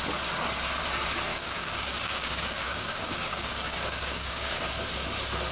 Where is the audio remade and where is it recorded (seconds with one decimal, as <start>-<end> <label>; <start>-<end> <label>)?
0.0-1.3 recorded; 1.3-4.6 remade; 4.6-5.5 recorded